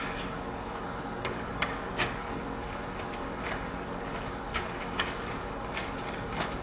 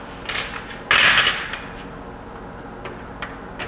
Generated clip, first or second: first